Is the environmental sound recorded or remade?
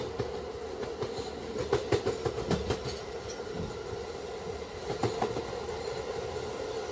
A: recorded